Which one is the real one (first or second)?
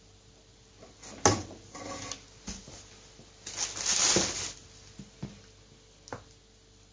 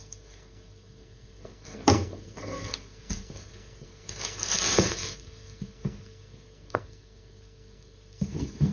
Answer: first